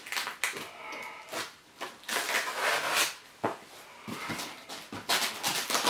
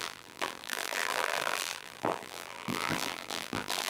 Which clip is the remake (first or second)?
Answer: second